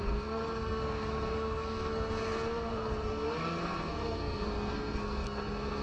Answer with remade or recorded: remade